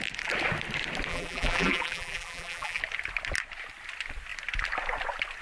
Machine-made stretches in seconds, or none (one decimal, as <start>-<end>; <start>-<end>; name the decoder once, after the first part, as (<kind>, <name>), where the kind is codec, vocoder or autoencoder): 1.1-2.8 (vocoder, BigVGAN v2)